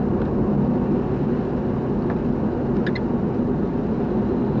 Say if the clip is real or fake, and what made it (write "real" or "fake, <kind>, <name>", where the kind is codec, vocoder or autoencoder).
real